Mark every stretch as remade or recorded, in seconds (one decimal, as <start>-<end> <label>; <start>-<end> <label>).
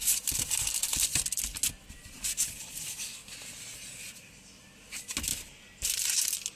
0.0-6.6 recorded